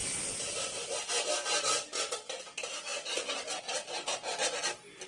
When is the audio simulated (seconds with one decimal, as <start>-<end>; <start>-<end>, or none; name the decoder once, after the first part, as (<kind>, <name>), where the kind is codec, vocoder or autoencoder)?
none